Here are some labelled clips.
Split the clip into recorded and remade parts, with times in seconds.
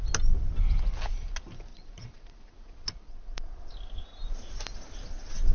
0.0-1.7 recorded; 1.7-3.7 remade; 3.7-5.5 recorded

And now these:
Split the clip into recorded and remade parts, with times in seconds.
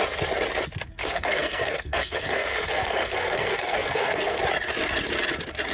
0.0-1.0 recorded; 1.0-4.4 remade; 4.4-5.7 recorded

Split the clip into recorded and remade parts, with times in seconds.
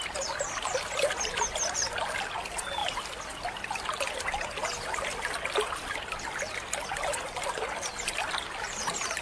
0.0-9.2 recorded